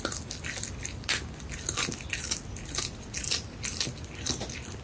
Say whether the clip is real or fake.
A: real